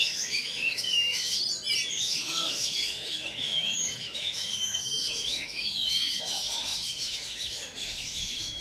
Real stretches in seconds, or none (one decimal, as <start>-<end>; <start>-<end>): 1.4-1.9